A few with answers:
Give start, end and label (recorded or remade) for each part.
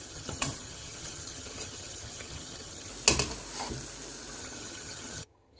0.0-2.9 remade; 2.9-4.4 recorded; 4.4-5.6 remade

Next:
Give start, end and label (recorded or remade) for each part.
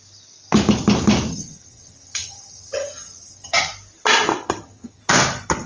0.0-1.3 recorded; 1.3-3.7 remade; 3.7-4.4 recorded; 4.4-5.0 remade; 5.0-5.7 recorded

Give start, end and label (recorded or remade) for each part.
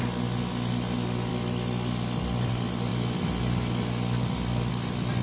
0.0-5.2 recorded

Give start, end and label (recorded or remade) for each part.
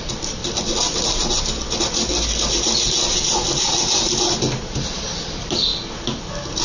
0.0-6.6 recorded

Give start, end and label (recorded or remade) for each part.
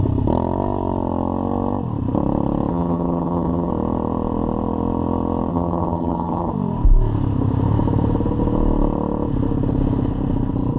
0.0-2.7 recorded; 2.7-3.7 remade; 3.7-5.5 recorded; 5.5-6.5 remade; 6.5-10.8 recorded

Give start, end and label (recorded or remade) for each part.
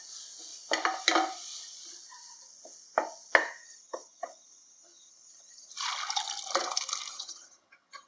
0.0-3.6 recorded; 3.6-5.7 remade; 5.7-7.1 recorded; 7.1-8.1 remade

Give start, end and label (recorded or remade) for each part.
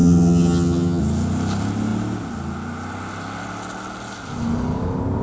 0.0-1.0 remade; 1.0-5.2 recorded